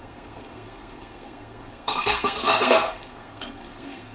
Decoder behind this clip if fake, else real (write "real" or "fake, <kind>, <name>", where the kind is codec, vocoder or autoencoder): fake, codec, SNAC